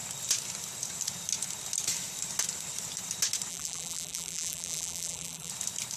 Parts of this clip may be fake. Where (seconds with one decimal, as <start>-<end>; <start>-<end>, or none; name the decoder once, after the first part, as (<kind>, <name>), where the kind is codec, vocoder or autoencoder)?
3.5-5.5 (vocoder, BigVGAN v2)